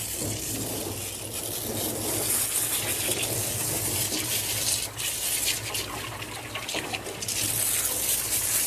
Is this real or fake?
real